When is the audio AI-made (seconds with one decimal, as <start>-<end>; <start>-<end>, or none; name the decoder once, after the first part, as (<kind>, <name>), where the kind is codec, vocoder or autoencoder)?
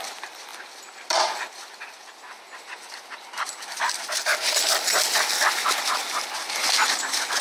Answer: 0.0-7.4 (vocoder, BigVGAN v2)